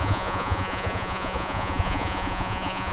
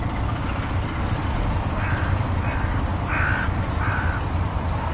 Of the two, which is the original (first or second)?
second